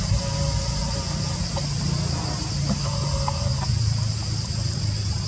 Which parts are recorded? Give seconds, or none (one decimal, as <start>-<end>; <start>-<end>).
0.0-5.3